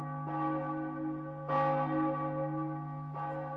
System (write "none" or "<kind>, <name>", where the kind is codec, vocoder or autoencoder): none